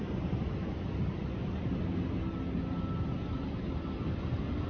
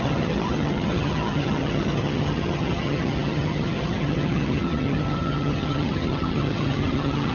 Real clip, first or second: first